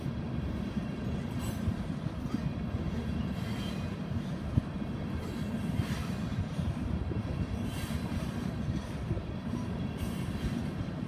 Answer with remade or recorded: remade